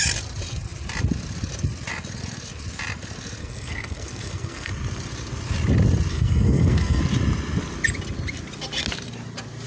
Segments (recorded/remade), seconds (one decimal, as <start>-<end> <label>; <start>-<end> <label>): 0.0-3.4 recorded; 3.4-4.7 remade; 4.7-6.1 recorded; 6.1-7.0 remade; 7.0-9.7 recorded